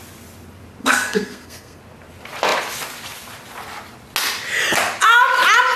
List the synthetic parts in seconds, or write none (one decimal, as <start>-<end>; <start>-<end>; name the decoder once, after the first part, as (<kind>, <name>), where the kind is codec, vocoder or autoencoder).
0.8-1.8 (codec, SNAC)